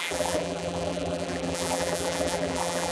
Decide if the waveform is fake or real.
fake